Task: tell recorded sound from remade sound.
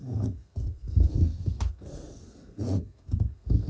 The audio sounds remade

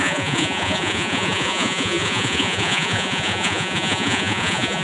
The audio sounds remade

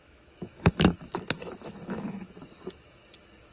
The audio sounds remade